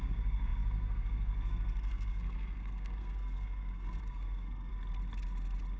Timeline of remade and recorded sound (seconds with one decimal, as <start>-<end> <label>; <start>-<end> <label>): 0.0-4.7 remade; 4.7-5.8 recorded